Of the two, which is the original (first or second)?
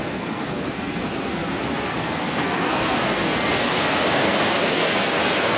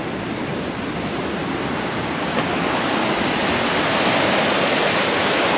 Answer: second